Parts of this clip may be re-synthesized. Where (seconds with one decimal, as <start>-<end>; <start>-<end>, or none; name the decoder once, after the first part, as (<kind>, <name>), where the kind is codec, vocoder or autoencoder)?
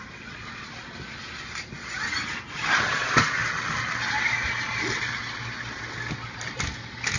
none